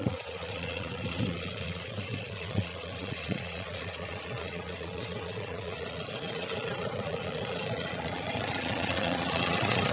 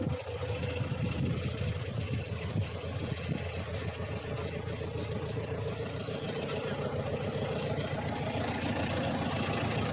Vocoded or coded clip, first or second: first